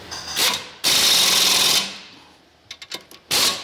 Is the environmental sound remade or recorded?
recorded